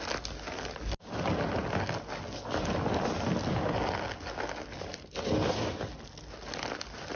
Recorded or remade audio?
recorded